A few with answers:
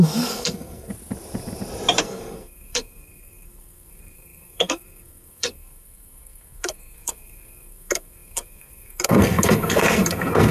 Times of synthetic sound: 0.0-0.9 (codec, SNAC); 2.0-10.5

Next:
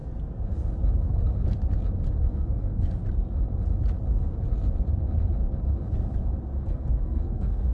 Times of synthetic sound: 1.0-1.4 (codec, SNAC); 2.2-3.0; 6.7-7.7

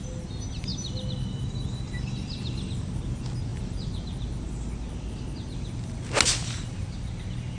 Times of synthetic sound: none

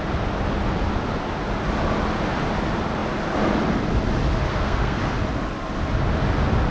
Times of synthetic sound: 4.5-5.0 (codec, SNAC)

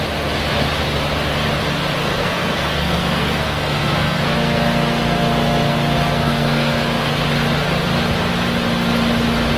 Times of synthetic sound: 2.0-7.2 (codec, SNAC)